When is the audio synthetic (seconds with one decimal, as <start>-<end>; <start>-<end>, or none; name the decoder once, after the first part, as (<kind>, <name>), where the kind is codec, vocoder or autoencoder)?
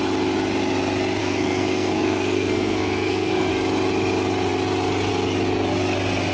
1.2-3.5 (codec, SNAC)